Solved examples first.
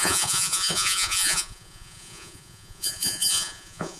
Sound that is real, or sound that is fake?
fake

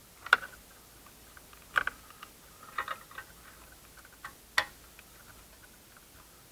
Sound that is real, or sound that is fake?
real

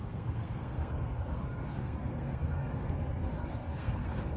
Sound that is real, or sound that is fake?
fake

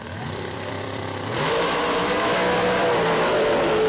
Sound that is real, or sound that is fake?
fake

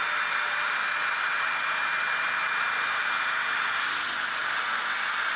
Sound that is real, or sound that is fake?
real